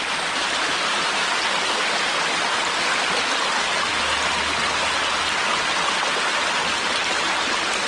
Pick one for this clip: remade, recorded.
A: recorded